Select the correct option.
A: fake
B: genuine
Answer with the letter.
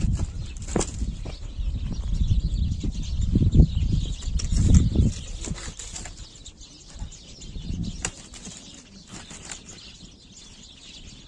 B